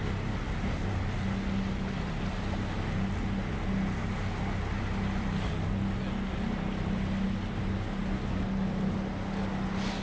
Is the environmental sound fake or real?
real